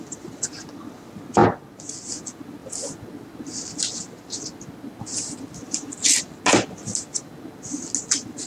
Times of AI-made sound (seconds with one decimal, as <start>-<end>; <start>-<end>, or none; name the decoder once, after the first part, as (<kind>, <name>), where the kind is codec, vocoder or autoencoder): none